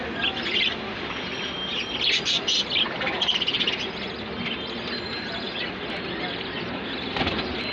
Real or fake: real